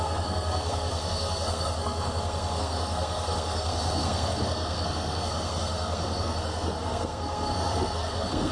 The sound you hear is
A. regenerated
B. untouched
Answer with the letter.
A